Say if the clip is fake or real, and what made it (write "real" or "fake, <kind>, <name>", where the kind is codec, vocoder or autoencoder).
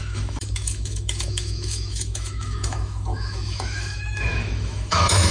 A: fake, autoencoder, DAC-VAE